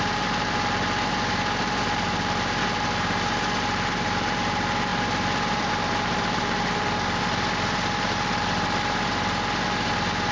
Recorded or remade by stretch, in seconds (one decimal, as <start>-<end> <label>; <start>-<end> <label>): 0.0-4.9 recorded; 4.9-7.2 remade; 7.2-10.3 recorded